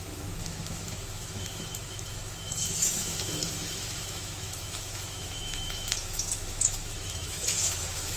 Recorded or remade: remade